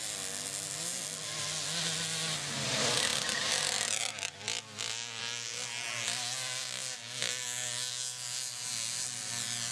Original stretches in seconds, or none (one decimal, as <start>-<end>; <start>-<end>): 0.0-9.7